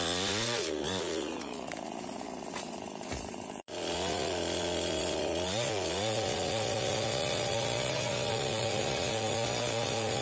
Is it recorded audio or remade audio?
remade